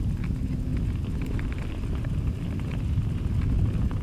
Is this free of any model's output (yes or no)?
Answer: yes